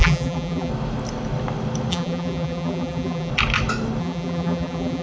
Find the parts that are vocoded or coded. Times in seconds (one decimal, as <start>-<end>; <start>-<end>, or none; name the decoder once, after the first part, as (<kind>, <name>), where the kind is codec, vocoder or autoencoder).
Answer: 0.0-0.7 (vocoder, BigVGAN v2); 1.9-3.3; 4.0-5.0